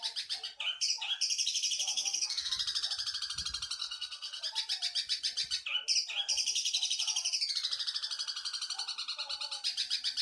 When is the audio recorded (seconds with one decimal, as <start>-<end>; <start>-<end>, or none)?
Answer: 0.0-1.9; 2.5-3.8; 4.4-10.2